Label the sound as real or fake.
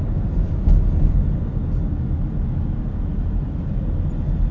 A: real